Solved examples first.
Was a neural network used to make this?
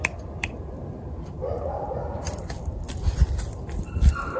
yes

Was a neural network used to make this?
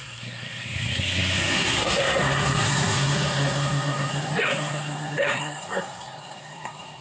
yes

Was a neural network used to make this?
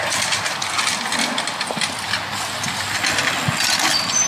no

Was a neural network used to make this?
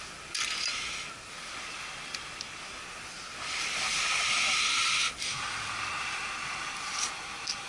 no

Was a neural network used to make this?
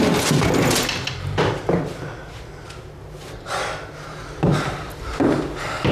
no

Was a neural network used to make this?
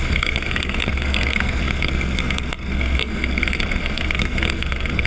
yes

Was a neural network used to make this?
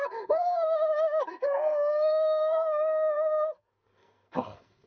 yes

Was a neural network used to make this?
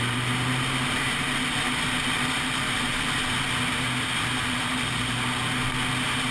no